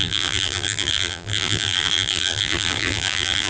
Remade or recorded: remade